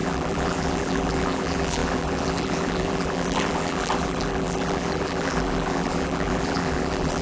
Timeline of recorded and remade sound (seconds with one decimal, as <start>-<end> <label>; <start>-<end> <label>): 0.0-7.2 remade